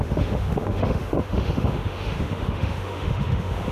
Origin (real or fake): fake